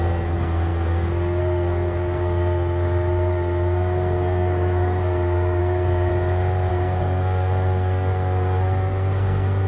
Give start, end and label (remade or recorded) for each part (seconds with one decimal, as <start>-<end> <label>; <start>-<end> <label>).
0.0-6.1 remade; 6.1-6.7 recorded; 6.7-9.7 remade